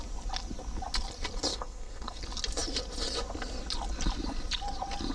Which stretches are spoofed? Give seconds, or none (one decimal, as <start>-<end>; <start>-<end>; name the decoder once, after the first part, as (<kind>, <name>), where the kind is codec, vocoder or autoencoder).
1.5-2.2 (codec, SNAC)